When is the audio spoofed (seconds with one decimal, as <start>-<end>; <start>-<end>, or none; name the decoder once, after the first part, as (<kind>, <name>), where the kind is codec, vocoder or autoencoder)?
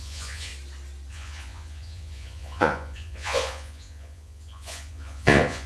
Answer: 0.0-0.5 (vocoder, Vocos); 1.1-5.7